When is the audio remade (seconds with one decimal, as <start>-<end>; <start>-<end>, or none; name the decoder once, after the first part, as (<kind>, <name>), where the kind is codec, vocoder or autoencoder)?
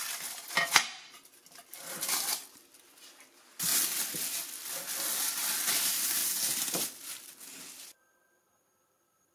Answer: 0.0-3.7 (vocoder, BigVGAN v2); 5.7-6.2; 7.6-9.3